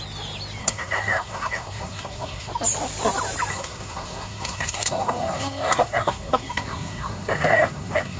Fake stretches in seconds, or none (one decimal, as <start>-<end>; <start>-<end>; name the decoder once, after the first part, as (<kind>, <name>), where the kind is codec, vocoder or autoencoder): 0.6-2.5 (codec, SNAC); 3.5-8.2